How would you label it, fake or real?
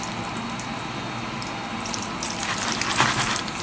real